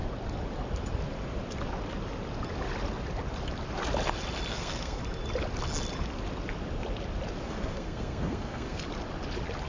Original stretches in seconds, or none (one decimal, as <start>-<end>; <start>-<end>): 0.0-4.5; 5.0-7.4; 8.8-9.7